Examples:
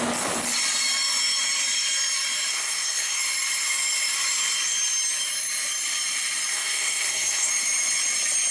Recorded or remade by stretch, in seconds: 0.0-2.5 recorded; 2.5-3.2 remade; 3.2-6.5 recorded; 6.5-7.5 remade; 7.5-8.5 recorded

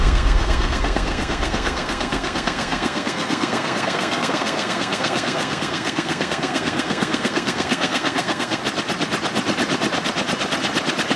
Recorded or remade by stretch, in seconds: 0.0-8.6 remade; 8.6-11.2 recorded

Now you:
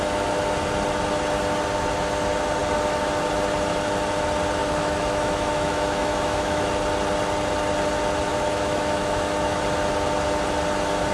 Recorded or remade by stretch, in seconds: 0.0-4.6 recorded; 4.6-6.7 remade; 6.7-8.3 recorded; 8.3-9.6 remade; 9.6-11.1 recorded